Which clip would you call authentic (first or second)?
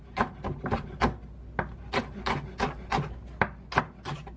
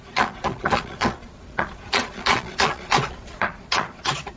first